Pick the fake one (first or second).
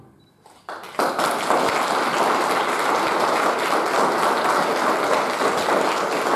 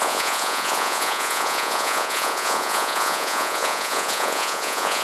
second